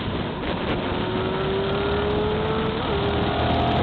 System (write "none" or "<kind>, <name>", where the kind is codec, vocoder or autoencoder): none